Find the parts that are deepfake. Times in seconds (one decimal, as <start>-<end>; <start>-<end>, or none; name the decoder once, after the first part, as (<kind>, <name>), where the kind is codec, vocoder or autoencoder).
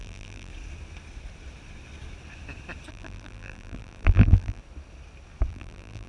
0.0-0.5 (vocoder, BigVGAN v2); 2.9-4.6; 5.5-6.1